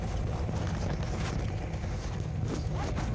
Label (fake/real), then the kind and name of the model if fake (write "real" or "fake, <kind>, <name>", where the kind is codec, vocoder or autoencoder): real